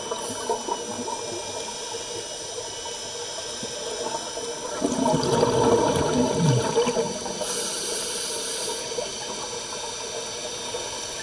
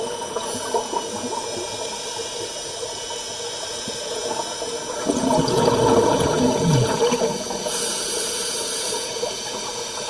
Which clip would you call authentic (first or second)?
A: first